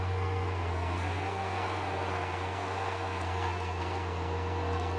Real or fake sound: fake